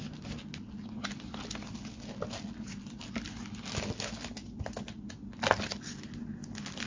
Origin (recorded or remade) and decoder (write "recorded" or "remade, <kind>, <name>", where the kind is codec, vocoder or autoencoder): recorded